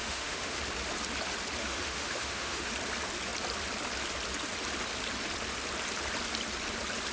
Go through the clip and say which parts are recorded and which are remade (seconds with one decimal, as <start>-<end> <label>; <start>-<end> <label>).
0.0-0.6 remade; 0.6-1.6 recorded; 1.6-2.7 remade; 2.7-7.1 recorded